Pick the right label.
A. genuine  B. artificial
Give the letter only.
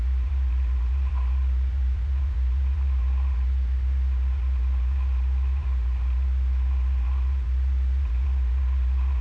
B